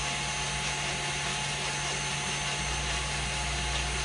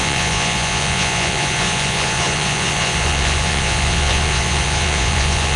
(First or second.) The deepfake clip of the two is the second